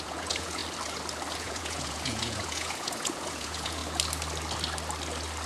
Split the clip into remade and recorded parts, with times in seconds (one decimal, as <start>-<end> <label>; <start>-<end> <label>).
0.0-0.6 remade; 0.6-1.4 recorded; 1.4-3.8 remade; 3.8-5.5 recorded